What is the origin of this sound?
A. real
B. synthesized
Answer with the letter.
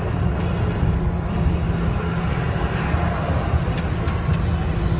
A